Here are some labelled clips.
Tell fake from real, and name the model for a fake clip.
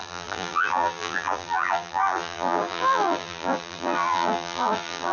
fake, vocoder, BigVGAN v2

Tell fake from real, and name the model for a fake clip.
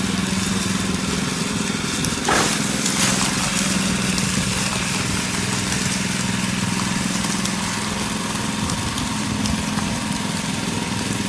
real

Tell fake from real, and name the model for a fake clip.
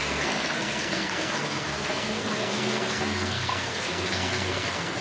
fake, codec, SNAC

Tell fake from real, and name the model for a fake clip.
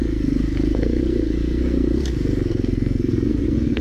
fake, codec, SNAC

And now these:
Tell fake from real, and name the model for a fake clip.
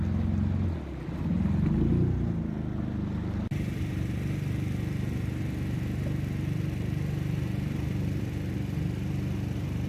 real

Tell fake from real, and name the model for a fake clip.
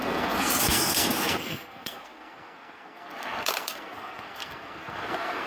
fake, codec, SNAC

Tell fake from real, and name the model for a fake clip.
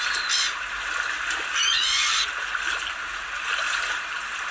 real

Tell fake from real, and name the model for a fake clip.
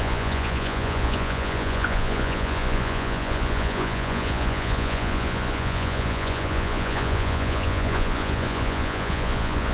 fake, vocoder, Vocos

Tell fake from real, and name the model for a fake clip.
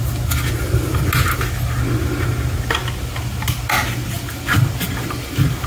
real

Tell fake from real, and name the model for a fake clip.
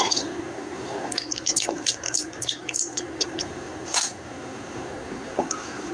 fake, codec, SNAC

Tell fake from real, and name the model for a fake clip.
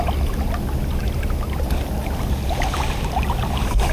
real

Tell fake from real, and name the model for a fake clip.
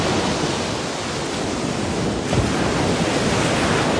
real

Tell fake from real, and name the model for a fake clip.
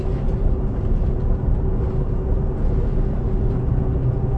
real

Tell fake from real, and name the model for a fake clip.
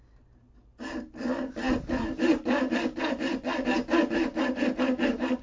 real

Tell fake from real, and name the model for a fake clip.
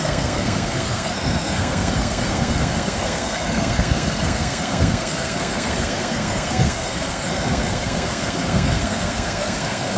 fake, codec, SNAC